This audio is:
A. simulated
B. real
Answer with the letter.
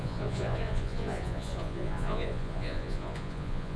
A